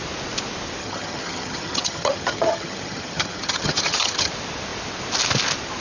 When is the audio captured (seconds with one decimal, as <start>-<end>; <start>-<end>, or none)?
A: 0.0-0.8; 4.3-5.8